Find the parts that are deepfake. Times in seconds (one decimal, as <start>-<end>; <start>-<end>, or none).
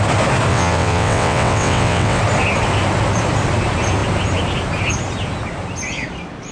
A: 0.5-2.2